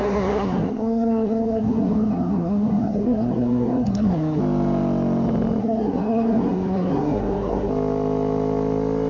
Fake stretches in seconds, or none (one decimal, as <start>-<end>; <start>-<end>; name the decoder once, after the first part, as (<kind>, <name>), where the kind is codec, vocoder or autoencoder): 0.0-4.4 (codec, SNAC); 5.6-7.7

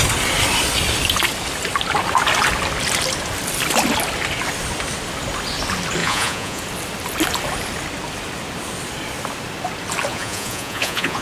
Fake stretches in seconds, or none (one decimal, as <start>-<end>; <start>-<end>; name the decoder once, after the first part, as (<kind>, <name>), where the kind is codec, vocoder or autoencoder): 6.0-6.6 (vocoder, Vocos); 10.1-11.2

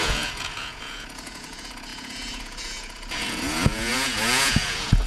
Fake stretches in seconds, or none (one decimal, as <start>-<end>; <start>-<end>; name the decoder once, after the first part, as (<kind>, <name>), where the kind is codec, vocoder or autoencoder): 0.0-5.1 (vocoder, Vocos)